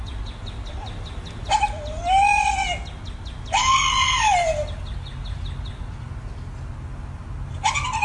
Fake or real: real